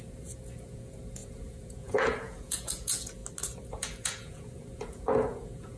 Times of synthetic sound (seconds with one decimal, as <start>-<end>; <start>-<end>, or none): 0.0-3.2; 3.7-5.8